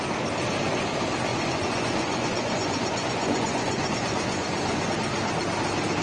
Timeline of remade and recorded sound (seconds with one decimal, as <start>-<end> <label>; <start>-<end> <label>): 0.0-1.3 recorded; 1.3-4.9 remade; 4.9-6.0 recorded